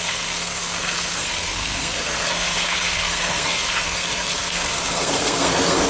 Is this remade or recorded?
remade